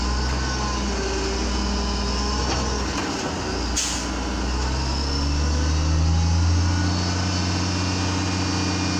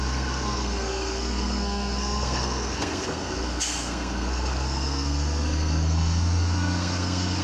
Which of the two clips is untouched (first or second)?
first